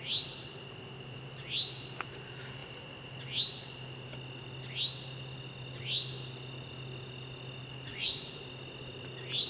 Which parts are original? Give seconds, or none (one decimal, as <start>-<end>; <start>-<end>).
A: 0.0-7.9; 8.4-9.5